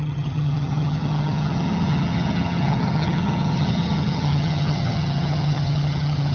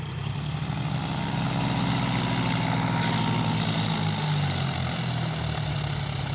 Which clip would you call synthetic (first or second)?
first